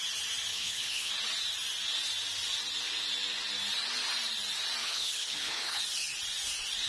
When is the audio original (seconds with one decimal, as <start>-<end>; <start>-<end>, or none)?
0.0-0.5; 1.1-4.8; 5.8-6.9